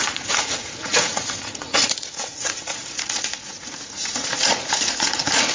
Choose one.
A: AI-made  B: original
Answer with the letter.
A